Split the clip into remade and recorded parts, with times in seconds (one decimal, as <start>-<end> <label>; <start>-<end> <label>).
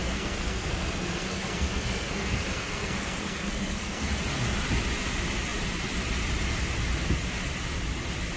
0.0-4.1 remade; 4.1-8.4 recorded